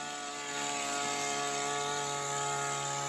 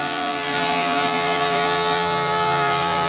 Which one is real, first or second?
first